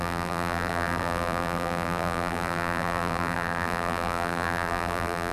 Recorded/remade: remade